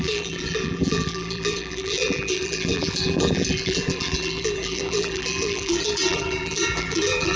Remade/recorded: remade